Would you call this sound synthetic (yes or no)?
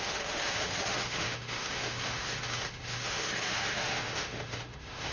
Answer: yes